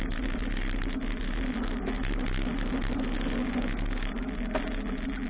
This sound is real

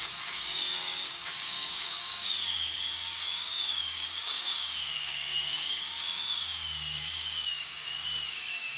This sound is fake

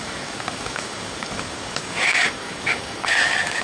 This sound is fake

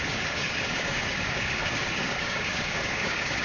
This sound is fake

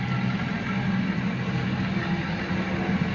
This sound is real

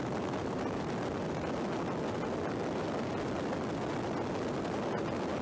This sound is real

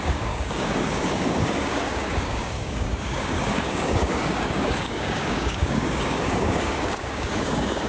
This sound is fake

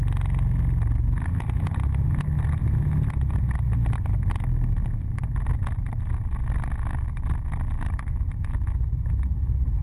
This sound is real